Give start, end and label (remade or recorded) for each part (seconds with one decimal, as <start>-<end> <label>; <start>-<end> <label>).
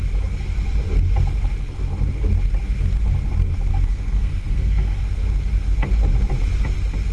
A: 0.0-3.7 recorded; 3.7-5.0 remade; 5.0-7.1 recorded